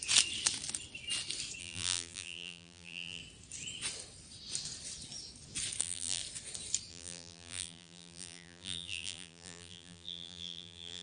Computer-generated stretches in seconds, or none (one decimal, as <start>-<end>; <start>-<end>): 1.6-3.2; 5.8-6.2; 6.9-11.0